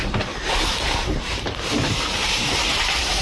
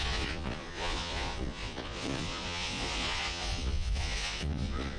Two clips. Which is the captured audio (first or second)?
first